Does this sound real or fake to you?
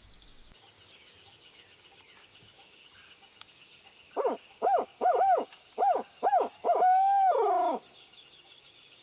fake